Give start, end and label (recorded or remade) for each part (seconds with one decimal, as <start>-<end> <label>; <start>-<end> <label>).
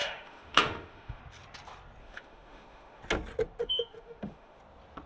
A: 0.0-1.2 remade; 1.2-2.0 recorded; 2.0-3.0 remade; 3.0-3.6 recorded; 3.6-4.6 remade; 4.6-5.1 recorded